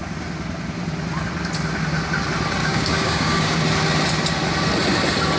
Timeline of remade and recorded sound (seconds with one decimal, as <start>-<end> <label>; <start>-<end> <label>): 0.0-2.6 recorded; 2.6-3.6 remade; 3.6-5.4 recorded